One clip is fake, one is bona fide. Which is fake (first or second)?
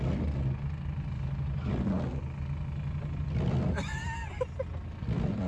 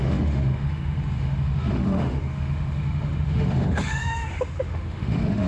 second